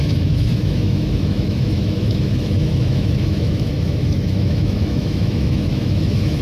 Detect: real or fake fake